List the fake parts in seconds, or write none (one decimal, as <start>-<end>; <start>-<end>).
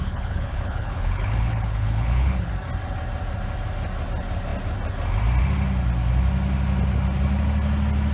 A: 0.0-2.5